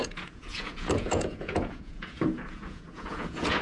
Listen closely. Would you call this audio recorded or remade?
remade